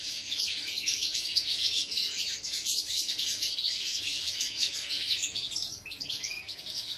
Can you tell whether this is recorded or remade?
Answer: remade